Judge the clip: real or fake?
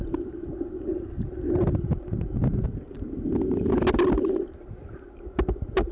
real